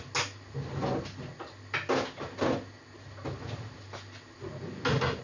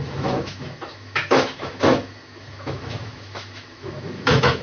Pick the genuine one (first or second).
first